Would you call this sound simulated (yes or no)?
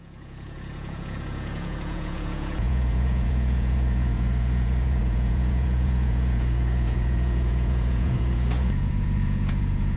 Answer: yes